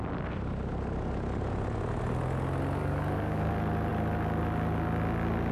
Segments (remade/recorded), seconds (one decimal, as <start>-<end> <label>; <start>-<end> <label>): 0.0-2.8 recorded; 2.8-3.5 remade; 3.5-5.5 recorded